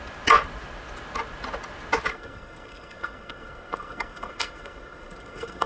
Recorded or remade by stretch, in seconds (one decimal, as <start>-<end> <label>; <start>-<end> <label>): 0.0-2.1 recorded; 2.1-5.7 remade